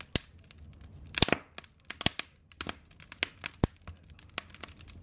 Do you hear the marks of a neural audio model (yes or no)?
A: no